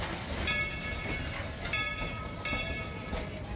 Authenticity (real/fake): real